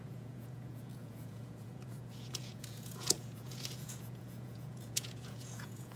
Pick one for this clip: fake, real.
fake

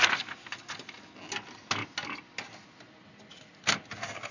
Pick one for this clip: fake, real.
real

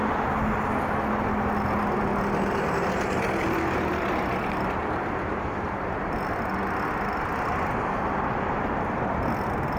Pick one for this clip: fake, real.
real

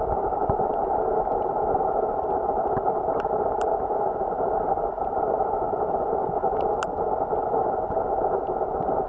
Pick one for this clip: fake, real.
real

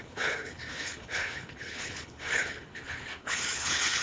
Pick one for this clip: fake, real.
fake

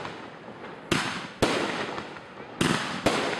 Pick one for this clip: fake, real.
real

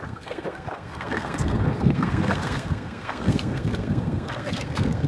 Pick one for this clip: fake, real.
fake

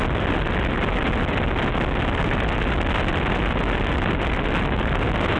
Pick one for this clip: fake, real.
real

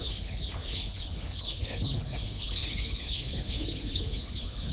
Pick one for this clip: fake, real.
fake